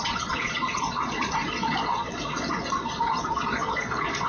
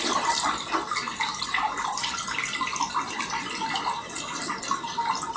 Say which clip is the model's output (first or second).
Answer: first